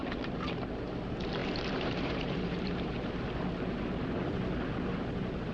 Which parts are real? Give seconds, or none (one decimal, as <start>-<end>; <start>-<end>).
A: 0.0-1.4; 3.2-5.5